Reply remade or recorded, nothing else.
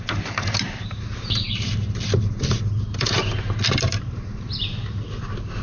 recorded